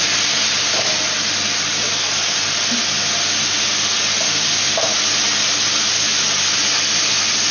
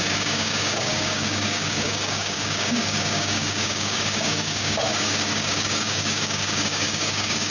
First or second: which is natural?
first